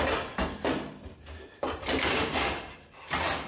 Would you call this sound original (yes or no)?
yes